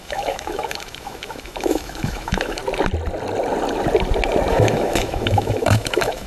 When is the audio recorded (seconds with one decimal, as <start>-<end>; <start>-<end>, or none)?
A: 2.6-4.5